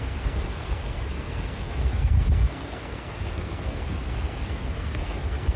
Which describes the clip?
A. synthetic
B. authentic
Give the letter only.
A